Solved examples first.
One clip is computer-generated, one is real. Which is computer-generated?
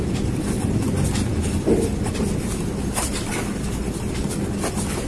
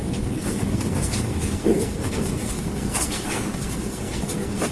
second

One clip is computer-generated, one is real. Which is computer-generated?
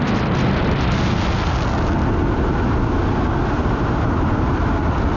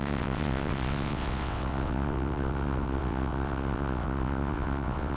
second